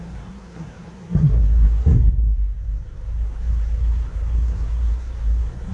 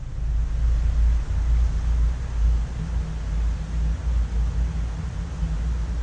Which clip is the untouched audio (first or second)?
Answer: second